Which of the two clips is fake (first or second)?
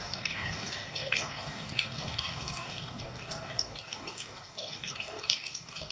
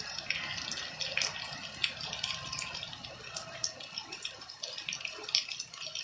first